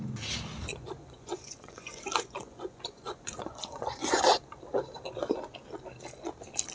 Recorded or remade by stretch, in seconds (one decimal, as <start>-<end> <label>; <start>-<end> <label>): 0.0-0.7 recorded; 0.7-4.2 remade; 4.2-6.7 recorded